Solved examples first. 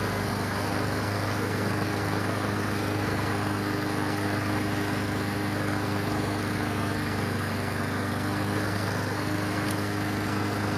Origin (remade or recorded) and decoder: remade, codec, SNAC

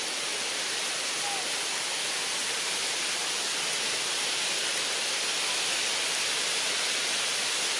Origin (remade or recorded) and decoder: recorded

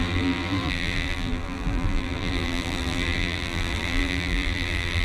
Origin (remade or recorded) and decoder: remade, vocoder, BigVGAN v2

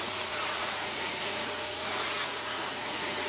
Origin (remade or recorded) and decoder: remade, vocoder, Vocos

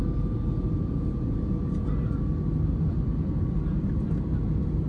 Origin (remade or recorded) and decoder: recorded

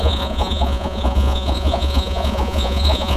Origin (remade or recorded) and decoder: remade, vocoder, Vocos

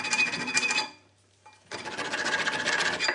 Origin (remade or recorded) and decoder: recorded